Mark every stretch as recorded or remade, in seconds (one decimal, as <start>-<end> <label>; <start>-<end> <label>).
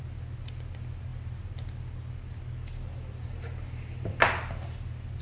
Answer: 0.0-5.2 recorded